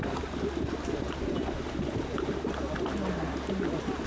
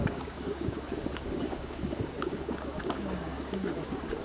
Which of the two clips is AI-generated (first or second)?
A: second